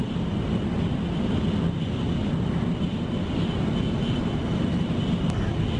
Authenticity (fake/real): real